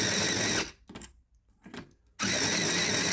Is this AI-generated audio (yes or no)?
no